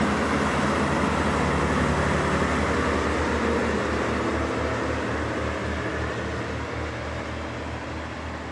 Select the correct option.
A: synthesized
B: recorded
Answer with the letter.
B